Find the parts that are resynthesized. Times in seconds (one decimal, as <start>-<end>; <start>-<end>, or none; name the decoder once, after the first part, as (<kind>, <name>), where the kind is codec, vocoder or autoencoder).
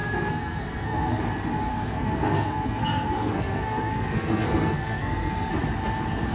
0.0-1.2 (codec, SNAC); 1.7-5.5